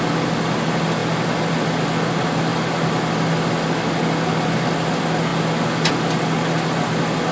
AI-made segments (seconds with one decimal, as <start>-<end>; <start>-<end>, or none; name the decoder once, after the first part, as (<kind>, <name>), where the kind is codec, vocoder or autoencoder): none